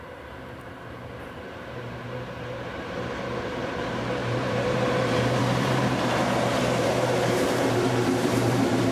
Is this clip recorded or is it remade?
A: remade